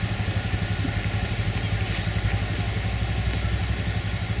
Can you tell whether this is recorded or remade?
recorded